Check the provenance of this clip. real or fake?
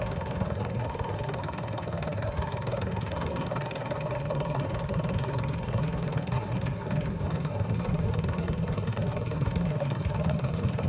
fake